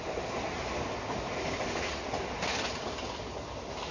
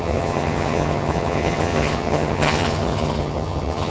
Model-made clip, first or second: second